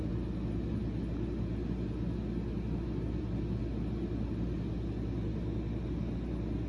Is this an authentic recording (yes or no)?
yes